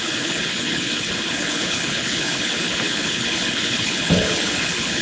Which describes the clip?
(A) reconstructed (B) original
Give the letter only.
A